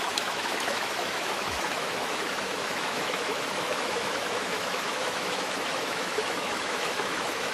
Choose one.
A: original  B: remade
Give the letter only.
B